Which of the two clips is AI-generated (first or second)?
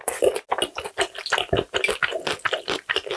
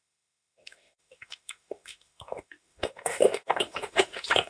second